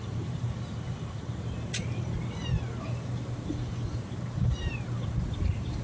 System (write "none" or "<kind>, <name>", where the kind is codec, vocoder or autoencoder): vocoder, BigVGAN v2